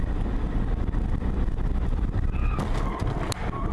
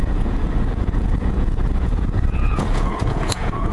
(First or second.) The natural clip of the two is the first